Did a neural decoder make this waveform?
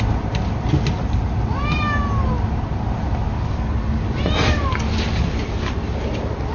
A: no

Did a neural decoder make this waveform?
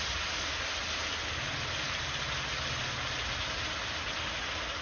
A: no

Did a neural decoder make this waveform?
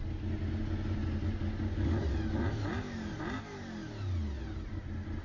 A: no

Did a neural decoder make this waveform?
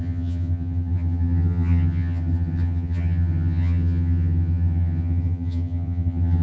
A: yes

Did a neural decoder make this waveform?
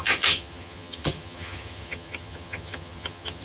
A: yes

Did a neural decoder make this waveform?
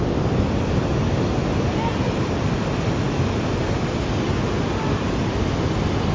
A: no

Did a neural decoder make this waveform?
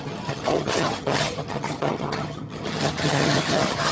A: yes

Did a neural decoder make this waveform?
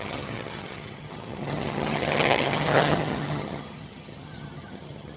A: yes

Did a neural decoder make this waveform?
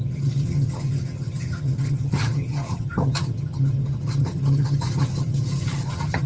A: yes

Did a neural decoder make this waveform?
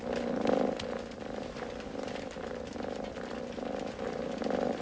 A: no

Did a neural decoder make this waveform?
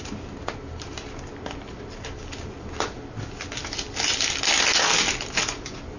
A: no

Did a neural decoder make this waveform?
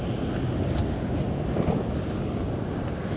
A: no